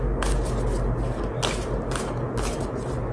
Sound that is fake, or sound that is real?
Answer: real